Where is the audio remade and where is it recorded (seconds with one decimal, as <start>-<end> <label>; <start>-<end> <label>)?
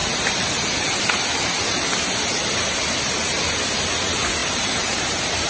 0.0-1.0 remade; 1.0-4.4 recorded; 4.4-5.5 remade